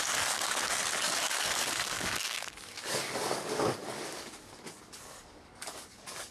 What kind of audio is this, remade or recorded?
remade